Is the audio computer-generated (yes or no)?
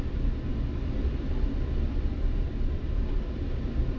no